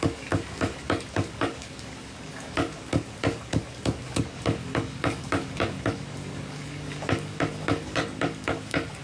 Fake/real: fake